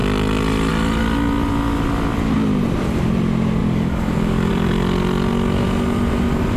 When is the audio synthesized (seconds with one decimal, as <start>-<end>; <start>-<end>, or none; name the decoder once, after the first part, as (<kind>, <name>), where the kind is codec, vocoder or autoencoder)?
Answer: 3.6-4.5 (codec, DAC)